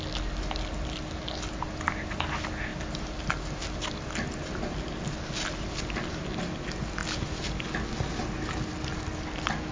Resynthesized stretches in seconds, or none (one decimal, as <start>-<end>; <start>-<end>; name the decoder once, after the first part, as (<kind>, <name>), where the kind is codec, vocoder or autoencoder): none